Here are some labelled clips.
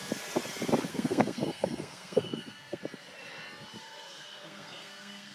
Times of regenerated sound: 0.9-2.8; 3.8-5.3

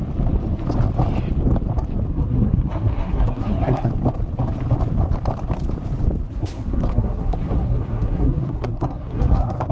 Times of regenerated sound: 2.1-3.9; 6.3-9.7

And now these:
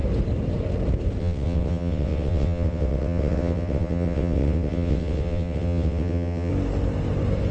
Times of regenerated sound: 1.2-6.5